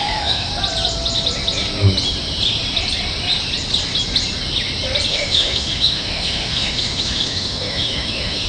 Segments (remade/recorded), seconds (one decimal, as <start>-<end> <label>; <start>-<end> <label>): 0.0-0.5 remade; 0.5-5.1 recorded; 5.1-8.5 remade